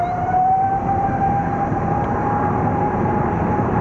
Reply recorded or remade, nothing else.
remade